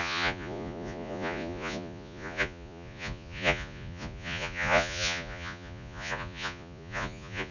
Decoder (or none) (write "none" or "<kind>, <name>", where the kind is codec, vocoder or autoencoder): vocoder, Vocos